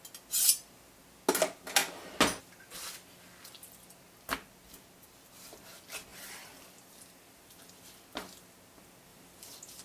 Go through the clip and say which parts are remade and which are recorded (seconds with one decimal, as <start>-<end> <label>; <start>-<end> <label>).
0.0-6.1 recorded; 6.1-7.8 remade; 7.8-9.1 recorded; 9.1-9.8 remade